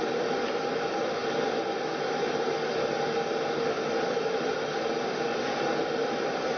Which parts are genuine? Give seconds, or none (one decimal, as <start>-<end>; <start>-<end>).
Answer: 0.0-6.6